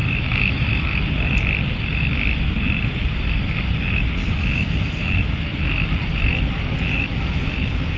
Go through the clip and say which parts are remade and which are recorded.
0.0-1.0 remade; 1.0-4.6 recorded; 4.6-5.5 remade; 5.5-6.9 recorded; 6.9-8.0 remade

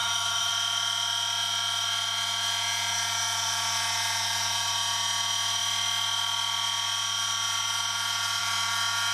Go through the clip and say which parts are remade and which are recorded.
0.0-0.5 remade; 0.5-9.1 recorded

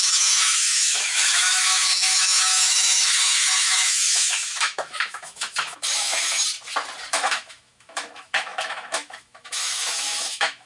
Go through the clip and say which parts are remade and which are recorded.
0.0-6.4 remade; 6.4-7.1 recorded; 7.1-10.7 remade

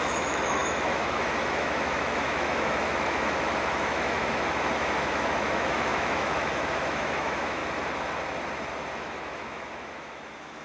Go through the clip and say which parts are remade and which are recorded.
0.0-7.6 remade; 7.6-8.9 recorded; 8.9-10.6 remade

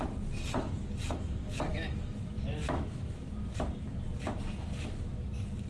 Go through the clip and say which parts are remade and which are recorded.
0.0-1.7 recorded; 1.7-3.3 remade; 3.3-5.7 recorded

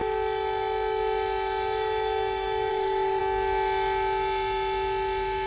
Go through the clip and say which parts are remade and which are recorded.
0.0-2.7 recorded; 2.7-3.2 remade; 3.2-5.5 recorded